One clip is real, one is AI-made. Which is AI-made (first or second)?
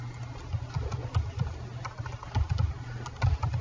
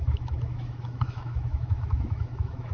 second